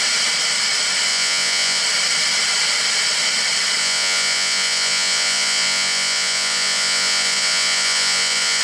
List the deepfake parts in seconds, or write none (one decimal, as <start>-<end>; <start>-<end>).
1.1-1.8; 3.8-8.6